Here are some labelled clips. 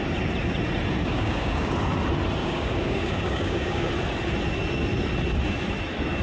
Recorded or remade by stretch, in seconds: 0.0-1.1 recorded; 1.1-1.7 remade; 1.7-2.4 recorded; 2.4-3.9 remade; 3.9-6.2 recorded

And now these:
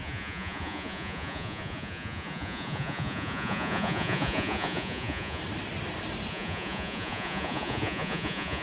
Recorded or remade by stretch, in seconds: 0.0-5.4 remade; 5.4-6.3 recorded; 6.3-8.6 remade

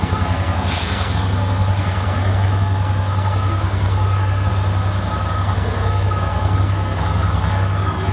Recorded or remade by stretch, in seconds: 0.0-4.5 remade; 4.5-5.3 recorded; 5.3-8.1 remade